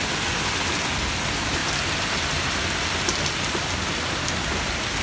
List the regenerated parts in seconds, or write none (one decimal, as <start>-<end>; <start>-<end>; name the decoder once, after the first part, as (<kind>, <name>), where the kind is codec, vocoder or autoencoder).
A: none